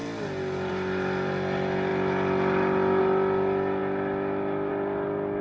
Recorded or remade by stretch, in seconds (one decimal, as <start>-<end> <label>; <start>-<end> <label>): 0.0-5.4 recorded